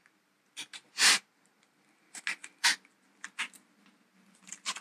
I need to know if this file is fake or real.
real